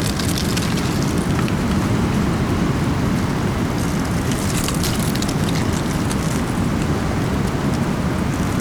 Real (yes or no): yes